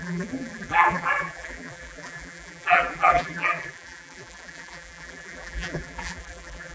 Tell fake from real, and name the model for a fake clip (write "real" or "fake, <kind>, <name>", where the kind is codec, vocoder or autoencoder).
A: fake, vocoder, BigVGAN v2